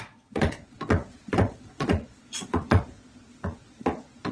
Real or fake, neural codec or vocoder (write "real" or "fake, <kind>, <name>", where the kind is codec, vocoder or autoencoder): fake, vocoder, Vocos